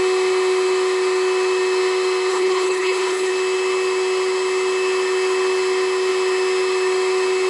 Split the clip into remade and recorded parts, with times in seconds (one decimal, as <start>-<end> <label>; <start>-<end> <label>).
0.0-2.3 recorded; 2.3-3.3 remade; 3.3-7.5 recorded